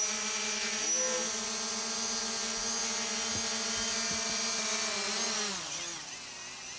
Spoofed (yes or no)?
no